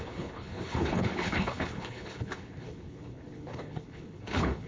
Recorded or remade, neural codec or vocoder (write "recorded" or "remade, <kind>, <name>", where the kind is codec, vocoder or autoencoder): remade, codec, HILCodec